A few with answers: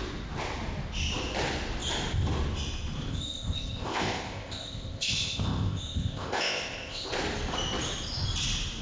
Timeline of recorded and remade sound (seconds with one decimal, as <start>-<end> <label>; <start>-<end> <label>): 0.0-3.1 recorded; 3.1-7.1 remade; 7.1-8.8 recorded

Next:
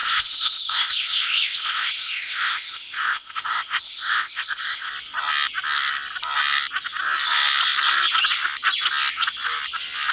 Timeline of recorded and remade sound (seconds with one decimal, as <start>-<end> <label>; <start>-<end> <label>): 0.0-4.9 remade; 4.9-10.1 recorded

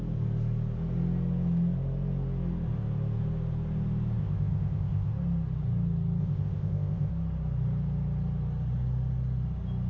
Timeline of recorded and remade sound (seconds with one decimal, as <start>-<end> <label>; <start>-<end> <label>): 0.0-4.2 recorded; 4.2-5.1 remade; 5.1-6.2 recorded; 6.2-7.1 remade; 7.1-9.9 recorded